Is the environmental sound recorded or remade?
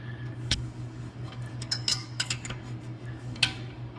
remade